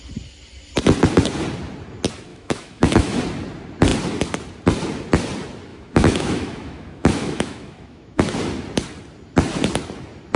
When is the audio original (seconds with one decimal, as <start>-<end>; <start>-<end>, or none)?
0.0-2.3; 3.2-5.7; 8.2-10.4